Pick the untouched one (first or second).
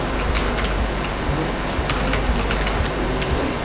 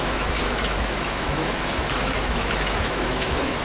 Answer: first